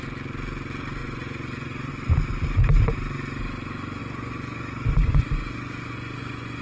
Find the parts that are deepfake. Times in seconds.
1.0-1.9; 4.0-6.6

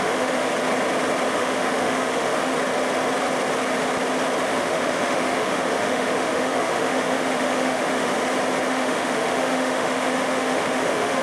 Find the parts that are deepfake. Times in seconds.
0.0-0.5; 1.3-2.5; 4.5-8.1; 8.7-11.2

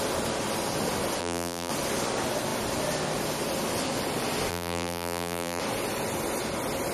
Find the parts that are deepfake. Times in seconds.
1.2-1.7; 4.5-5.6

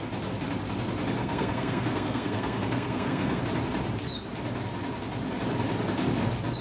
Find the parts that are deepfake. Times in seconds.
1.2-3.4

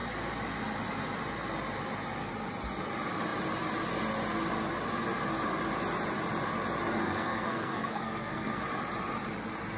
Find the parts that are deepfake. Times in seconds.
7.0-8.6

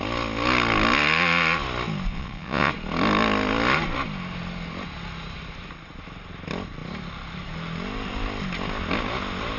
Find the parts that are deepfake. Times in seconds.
2.1-2.7